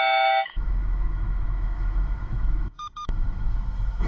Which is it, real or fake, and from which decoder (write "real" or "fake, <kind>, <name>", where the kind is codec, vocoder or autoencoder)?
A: fake, autoencoder, DAC-VAE